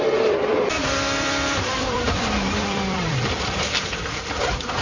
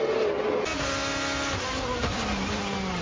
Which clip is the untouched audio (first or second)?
second